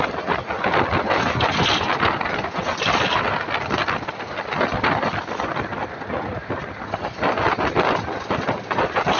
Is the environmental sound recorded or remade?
recorded